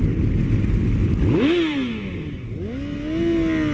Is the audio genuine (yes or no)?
yes